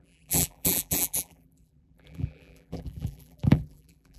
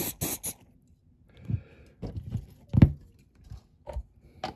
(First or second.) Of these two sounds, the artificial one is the first